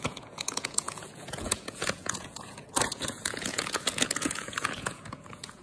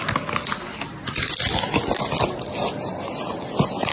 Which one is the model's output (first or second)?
first